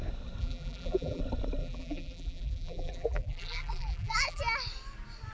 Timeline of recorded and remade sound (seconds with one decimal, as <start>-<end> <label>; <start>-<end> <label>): 0.0-0.4 recorded; 0.4-1.2 remade; 1.2-1.6 recorded; 1.6-4.4 remade; 4.4-5.3 recorded